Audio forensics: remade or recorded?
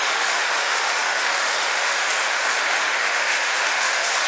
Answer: remade